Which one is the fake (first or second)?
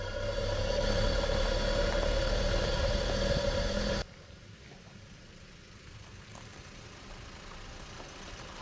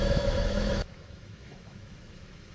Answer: second